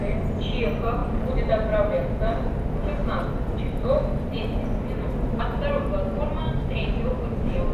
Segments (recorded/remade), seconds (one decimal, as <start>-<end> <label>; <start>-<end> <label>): 0.0-7.7 recorded